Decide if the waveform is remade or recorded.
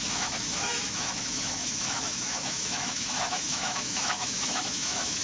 remade